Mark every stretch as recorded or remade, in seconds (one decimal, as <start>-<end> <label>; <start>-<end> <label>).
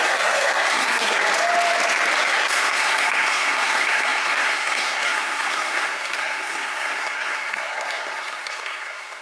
0.0-1.2 remade; 1.2-2.2 recorded; 2.2-9.2 remade